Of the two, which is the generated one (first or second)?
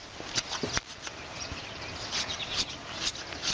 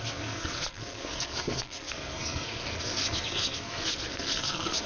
second